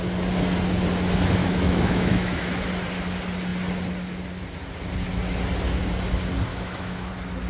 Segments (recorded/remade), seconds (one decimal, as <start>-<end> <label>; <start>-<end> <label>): 0.0-1.4 recorded; 1.4-2.7 remade; 2.7-6.5 recorded; 6.5-7.1 remade; 7.1-7.5 recorded